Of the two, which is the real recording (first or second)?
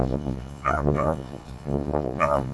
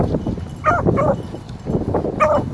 second